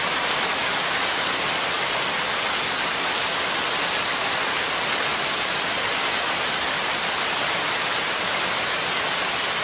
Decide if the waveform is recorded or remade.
recorded